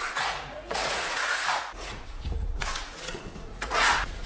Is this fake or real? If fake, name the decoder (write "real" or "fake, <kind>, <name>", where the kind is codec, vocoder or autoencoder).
fake, vocoder, Vocos